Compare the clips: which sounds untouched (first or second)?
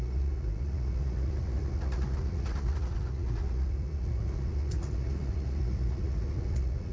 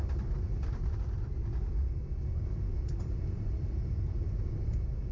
second